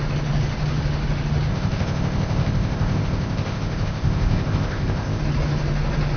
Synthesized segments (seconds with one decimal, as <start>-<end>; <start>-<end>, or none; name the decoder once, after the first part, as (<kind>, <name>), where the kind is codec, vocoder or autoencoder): 1.5-5.2 (codec, ZipCodec)

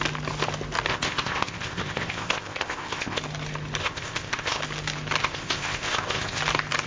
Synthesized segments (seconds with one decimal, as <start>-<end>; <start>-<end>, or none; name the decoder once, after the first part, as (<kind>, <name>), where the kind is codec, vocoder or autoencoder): 0.9-3.2 (codec, ZipCodec); 3.8-4.6; 5.2-6.4